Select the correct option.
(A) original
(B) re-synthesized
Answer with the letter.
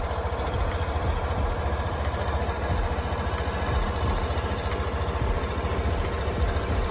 A